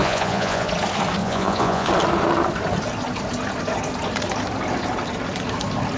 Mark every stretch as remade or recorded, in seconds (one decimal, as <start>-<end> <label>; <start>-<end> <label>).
0.0-0.7 remade; 0.7-1.2 recorded; 1.2-1.9 remade; 1.9-6.0 recorded